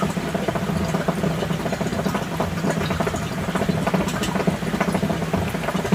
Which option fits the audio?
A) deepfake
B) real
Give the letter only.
B